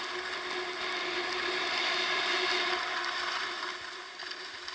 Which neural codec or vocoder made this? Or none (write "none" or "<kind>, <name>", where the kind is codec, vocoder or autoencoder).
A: none